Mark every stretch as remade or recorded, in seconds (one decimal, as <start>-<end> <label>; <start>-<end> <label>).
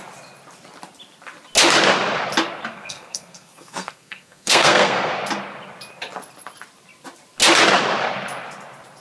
0.0-2.7 recorded; 2.7-5.1 remade; 5.1-9.0 recorded